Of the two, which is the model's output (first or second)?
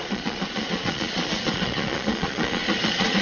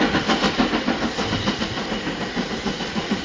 first